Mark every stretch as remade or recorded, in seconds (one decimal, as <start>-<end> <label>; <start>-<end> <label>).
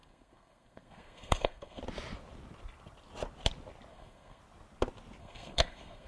0.0-1.8 remade; 1.8-3.9 recorded; 3.9-4.4 remade; 4.4-5.2 recorded; 5.2-6.1 remade